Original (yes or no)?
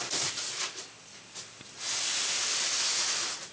yes